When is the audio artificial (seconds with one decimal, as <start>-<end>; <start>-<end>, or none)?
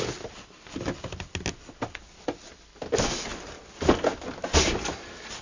none